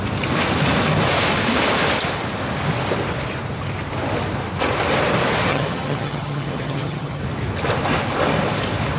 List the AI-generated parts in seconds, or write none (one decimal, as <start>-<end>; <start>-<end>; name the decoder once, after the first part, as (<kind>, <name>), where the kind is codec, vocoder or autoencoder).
5.5-7.2 (vocoder, HiFi-GAN)